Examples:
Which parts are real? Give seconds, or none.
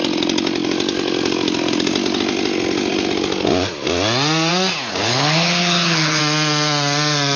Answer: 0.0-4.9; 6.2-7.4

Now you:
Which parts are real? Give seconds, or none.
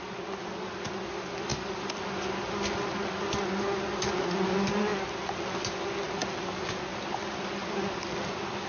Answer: 0.0-8.7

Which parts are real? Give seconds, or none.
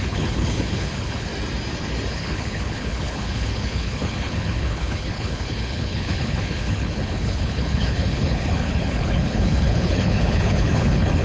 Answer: 1.3-2.1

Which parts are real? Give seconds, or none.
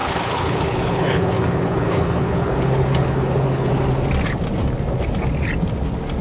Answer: 3.7-6.2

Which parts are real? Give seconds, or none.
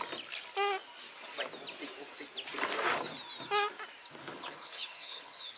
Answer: 0.0-4.2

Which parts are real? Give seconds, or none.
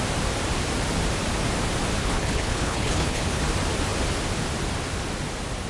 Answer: 0.0-2.0; 3.4-5.7